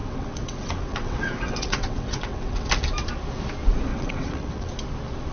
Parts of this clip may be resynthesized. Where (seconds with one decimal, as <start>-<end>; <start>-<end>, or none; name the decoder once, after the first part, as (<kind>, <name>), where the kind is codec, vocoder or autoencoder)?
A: 0.0-2.7 (vocoder, WaveNeXt); 3.9-4.7